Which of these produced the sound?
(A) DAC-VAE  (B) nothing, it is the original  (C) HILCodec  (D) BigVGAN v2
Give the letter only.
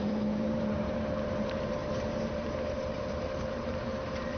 D